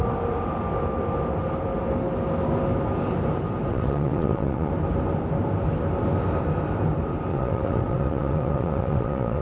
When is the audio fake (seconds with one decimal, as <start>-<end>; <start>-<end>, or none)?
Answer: 3.7-4.7; 7.3-9.4